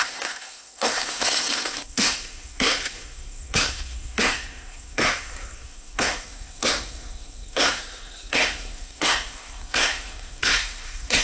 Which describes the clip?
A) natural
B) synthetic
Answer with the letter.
B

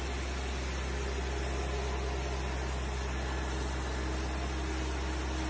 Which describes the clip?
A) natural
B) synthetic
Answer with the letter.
A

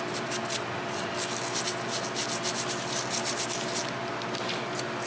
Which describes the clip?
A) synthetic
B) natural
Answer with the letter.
B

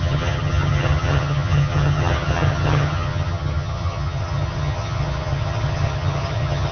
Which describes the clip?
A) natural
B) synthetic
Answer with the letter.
B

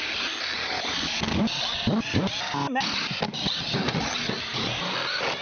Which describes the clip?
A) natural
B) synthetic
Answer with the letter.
A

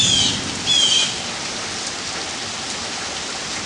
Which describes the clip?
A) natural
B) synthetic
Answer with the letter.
A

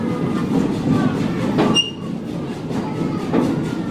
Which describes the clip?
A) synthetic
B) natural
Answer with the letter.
B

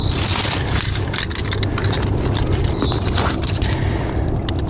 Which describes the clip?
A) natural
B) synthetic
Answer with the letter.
A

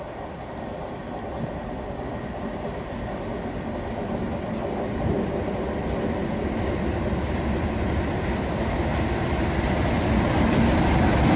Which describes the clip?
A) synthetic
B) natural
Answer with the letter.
B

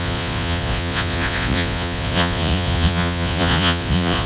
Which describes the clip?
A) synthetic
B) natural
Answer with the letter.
A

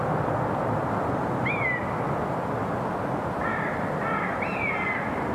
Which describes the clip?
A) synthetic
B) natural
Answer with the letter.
B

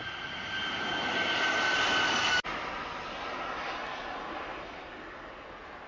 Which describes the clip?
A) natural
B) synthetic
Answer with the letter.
A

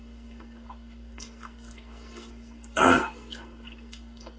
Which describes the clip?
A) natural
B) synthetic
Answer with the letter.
B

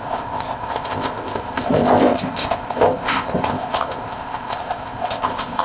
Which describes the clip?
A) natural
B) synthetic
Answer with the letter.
B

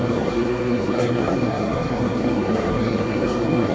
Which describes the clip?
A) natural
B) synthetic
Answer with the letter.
B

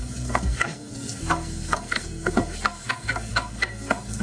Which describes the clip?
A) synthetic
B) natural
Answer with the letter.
A